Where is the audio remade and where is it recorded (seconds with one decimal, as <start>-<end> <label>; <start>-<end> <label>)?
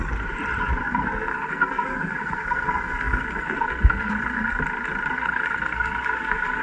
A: 0.0-0.8 recorded; 0.8-4.6 remade; 4.6-5.1 recorded; 5.1-6.6 remade